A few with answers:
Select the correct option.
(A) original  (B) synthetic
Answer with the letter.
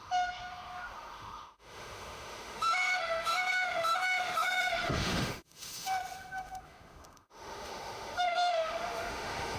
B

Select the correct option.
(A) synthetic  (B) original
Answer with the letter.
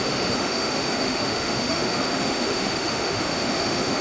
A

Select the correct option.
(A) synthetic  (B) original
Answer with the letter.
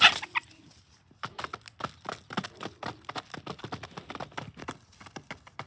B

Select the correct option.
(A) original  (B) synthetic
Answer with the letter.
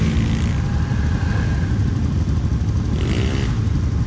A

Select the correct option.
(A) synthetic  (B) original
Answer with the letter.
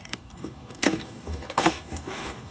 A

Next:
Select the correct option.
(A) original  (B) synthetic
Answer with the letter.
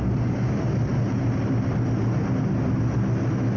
A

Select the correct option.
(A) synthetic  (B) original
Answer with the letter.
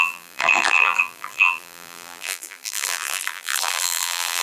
A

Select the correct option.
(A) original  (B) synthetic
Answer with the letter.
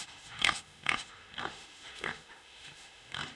B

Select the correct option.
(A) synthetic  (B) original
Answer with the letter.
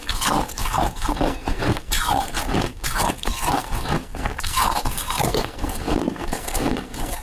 A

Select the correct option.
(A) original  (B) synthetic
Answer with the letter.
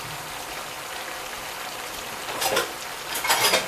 A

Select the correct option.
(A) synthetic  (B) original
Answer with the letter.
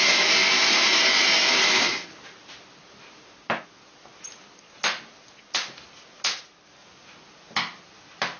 B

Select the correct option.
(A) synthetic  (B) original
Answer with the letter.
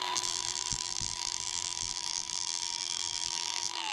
A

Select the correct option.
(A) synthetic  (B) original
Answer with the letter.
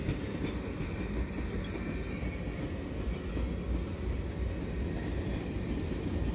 B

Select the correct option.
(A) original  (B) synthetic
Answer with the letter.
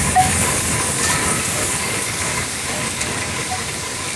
B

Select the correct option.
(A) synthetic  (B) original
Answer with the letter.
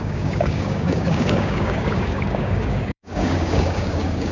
A